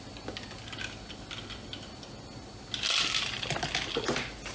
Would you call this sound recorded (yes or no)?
yes